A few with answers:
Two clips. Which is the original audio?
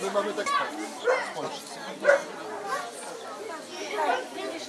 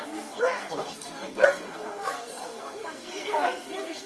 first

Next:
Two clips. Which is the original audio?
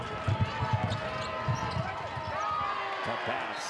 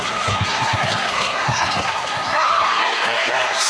first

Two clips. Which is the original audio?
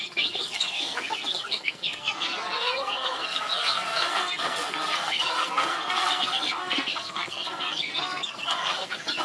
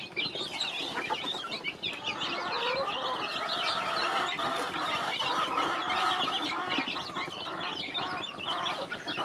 second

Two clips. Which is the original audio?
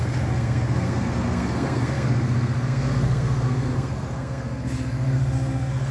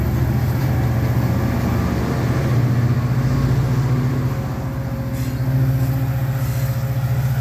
second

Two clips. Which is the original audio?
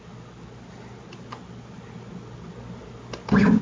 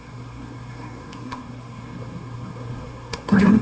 first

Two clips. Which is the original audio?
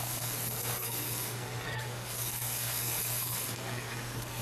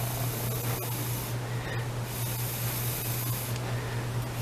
second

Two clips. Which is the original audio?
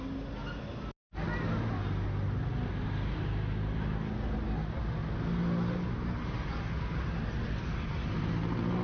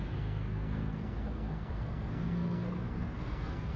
first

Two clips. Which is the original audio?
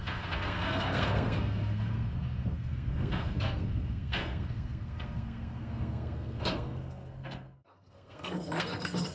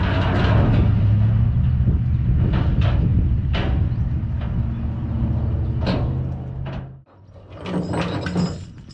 second